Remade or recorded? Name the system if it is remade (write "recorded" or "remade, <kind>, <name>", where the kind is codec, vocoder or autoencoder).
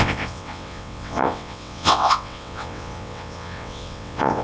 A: remade, vocoder, WaveNeXt